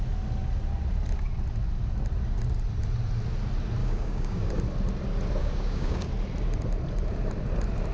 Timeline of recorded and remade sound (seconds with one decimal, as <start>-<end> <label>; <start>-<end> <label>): 0.0-3.8 recorded; 3.8-4.5 remade; 4.5-5.4 recorded; 5.4-6.1 remade; 6.1-7.9 recorded